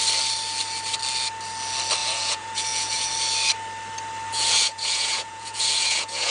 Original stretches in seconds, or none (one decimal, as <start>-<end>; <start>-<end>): 0.0-2.0; 3.1-4.3